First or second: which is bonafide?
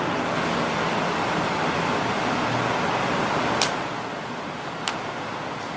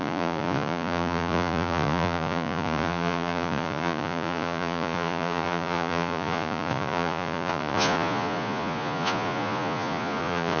first